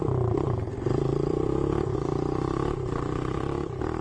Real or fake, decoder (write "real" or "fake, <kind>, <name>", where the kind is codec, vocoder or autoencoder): fake, vocoder, BigVGAN v2